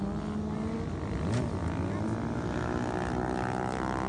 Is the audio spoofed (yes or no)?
no